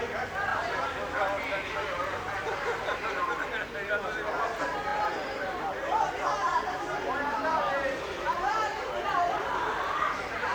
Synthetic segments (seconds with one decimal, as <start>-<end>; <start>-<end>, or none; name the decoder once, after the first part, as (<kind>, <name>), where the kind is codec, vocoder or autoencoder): 0.0-0.5 (vocoder, BigVGAN v2); 3.9-10.5